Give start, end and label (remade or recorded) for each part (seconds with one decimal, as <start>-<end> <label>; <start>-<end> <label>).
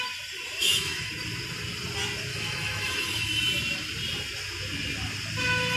0.0-0.6 recorded; 0.6-1.1 remade; 1.1-2.3 recorded; 2.3-3.4 remade; 3.4-5.8 recorded